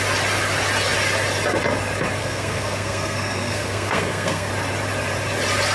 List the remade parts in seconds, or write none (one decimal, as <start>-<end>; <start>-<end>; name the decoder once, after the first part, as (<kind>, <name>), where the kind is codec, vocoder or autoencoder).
2.2-4.5 (codec, SNAC)